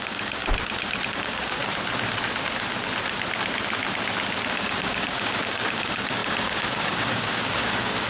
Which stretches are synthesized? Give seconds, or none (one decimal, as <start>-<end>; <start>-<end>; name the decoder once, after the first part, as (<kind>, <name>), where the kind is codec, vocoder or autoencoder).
0.0-0.4 (codec, DAC); 1.1-1.6; 4.6-8.1